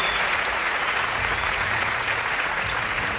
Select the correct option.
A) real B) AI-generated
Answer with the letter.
B